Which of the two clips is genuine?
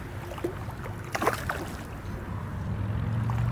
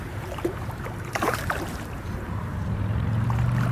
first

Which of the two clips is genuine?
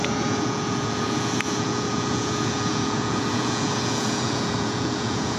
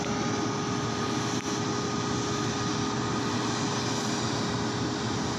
second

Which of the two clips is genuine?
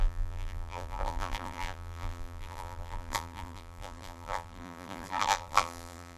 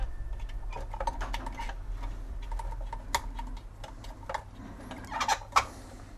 second